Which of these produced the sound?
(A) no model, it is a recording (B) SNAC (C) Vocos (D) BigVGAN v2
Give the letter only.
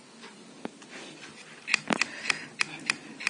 A